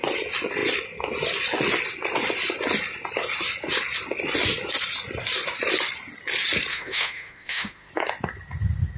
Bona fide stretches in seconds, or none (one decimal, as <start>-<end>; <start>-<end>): 0.0-6.7; 7.9-9.0